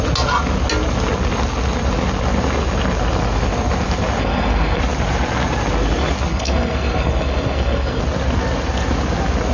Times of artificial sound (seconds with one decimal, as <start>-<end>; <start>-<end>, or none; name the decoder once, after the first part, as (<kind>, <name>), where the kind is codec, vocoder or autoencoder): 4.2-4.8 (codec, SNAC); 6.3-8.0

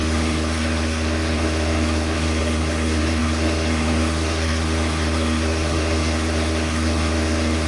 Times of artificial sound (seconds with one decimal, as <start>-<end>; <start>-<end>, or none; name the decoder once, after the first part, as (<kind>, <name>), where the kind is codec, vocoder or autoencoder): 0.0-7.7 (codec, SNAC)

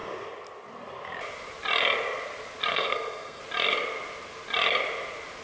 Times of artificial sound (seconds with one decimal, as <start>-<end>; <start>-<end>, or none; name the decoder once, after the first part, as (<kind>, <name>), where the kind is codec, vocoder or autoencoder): 2.7-3.4 (codec, SNAC)

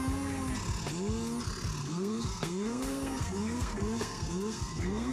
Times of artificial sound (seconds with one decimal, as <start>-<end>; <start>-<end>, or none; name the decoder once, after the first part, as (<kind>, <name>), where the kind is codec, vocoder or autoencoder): 1.8-5.1 (codec, SNAC)

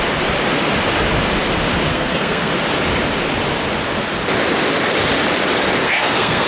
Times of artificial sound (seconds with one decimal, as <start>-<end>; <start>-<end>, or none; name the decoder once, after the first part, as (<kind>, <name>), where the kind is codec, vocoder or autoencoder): 1.9-2.5 (codec, SNAC); 5.8-6.5

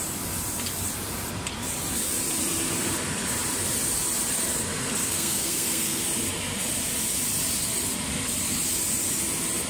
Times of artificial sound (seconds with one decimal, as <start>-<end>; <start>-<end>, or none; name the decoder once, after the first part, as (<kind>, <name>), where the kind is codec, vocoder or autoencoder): 5.0-6.0 (codec, SNAC)